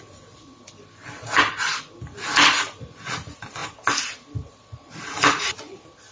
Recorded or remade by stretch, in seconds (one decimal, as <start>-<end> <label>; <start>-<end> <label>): 0.0-6.1 recorded